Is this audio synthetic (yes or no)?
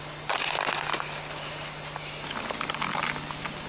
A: no